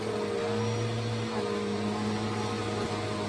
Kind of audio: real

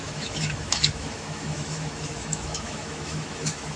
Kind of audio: fake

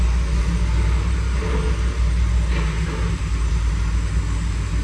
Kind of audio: real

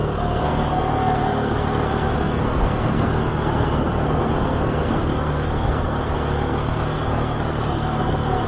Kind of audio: fake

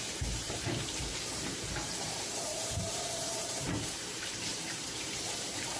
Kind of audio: fake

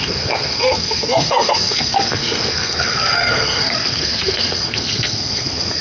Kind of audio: fake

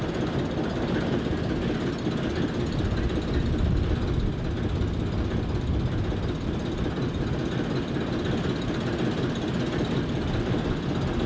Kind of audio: real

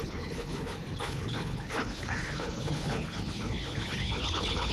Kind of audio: fake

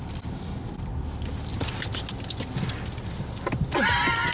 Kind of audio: real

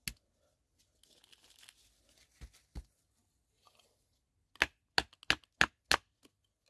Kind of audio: real